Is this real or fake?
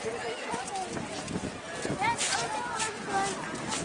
real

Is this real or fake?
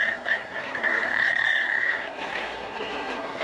fake